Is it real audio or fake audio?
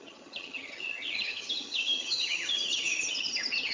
fake